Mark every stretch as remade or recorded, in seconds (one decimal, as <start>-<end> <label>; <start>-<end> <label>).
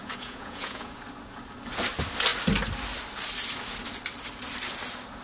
0.0-0.9 remade; 0.9-5.2 recorded